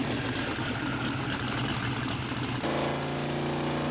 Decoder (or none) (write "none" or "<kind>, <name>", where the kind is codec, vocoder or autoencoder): none